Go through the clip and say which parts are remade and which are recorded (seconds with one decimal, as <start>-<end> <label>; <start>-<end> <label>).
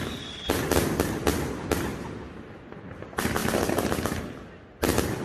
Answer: 0.0-5.2 recorded